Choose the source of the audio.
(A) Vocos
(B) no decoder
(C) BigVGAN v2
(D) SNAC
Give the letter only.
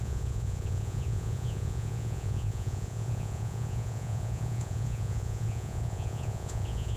A